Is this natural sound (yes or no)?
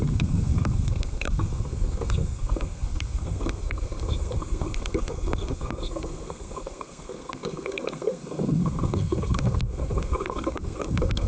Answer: no